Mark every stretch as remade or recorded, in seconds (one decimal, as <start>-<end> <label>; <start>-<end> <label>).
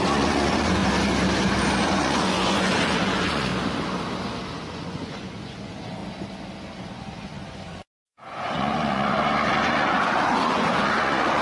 0.0-0.8 remade; 0.8-1.8 recorded; 1.8-3.5 remade; 3.5-4.7 recorded; 4.7-6.0 remade; 6.0-6.8 recorded; 6.8-11.4 remade